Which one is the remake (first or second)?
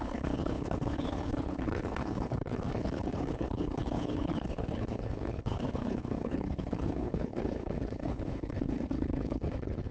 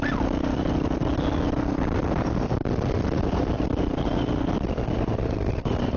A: first